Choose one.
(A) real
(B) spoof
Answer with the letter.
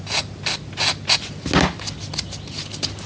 A